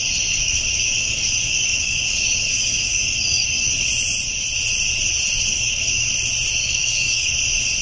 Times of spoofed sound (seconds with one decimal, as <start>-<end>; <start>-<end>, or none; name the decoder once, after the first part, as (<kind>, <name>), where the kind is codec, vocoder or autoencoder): 0.4-3.7 (codec, DAC); 5.5-6.1; 6.6-7.3